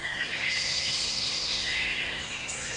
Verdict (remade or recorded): remade